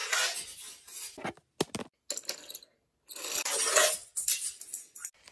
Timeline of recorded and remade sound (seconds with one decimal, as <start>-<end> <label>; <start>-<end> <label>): 0.0-5.3 recorded